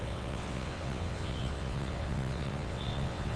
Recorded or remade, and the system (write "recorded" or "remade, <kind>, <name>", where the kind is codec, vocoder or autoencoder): remade, vocoder, WaveNeXt